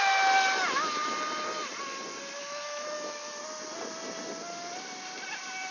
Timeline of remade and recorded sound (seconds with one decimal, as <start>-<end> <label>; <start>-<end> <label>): 0.0-2.4 recorded; 2.4-3.4 remade; 3.4-5.7 recorded